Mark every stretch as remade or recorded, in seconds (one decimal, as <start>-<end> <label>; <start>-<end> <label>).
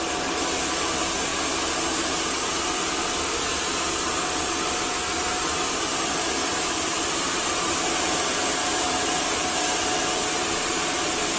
0.0-6.4 recorded; 6.4-7.7 remade; 7.7-11.4 recorded